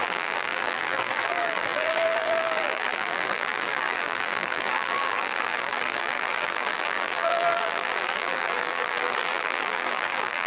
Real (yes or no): no